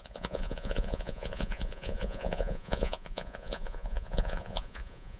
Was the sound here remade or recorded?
remade